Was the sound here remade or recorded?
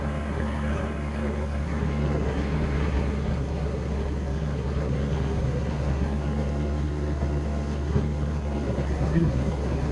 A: remade